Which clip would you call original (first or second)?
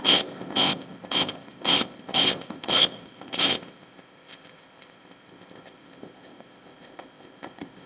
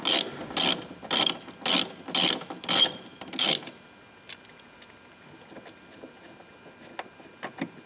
second